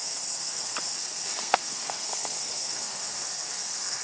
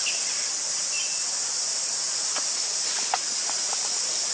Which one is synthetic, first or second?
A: first